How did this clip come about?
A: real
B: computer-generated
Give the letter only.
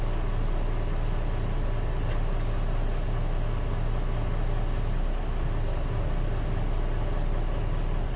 A